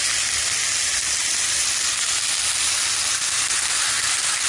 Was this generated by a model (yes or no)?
no